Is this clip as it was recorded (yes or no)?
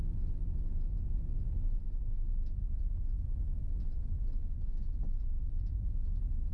yes